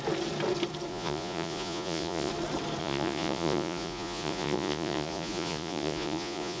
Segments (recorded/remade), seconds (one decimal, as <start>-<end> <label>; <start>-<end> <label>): 0.0-0.9 recorded; 0.9-2.3 remade; 2.3-2.8 recorded; 2.8-6.6 remade

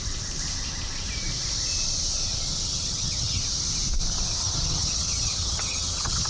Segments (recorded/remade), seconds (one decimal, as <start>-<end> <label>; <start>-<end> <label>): 0.0-2.7 recorded; 2.7-3.4 remade; 3.4-4.4 recorded; 4.4-6.3 remade

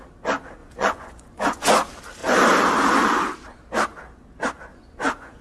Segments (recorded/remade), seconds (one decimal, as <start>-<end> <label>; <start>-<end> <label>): 0.0-0.6 recorded; 0.6-1.7 remade; 1.7-4.7 recorded; 4.7-5.4 remade

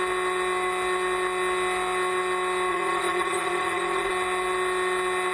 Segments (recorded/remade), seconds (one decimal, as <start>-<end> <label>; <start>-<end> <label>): 0.0-2.7 recorded; 2.7-4.1 remade; 4.1-5.3 recorded